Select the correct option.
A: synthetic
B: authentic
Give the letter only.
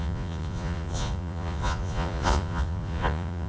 A